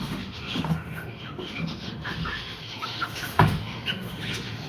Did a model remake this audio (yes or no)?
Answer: yes